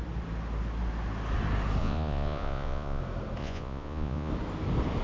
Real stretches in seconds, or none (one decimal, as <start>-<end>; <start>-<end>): 0.0-1.8; 3.0-3.4; 4.3-5.0